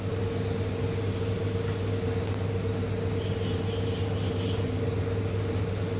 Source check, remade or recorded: recorded